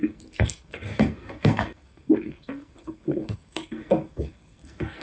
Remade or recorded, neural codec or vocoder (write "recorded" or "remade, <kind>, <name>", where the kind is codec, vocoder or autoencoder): remade, codec, SNAC